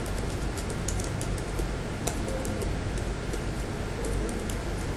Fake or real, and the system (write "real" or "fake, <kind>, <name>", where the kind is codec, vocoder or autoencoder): real